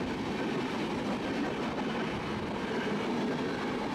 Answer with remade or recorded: recorded